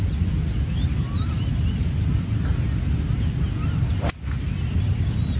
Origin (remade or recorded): recorded